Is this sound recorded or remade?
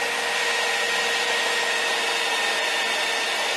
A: recorded